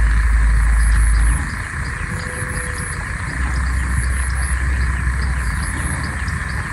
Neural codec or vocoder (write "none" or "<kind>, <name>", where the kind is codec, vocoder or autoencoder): none